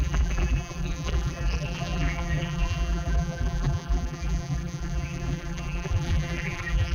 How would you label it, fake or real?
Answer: fake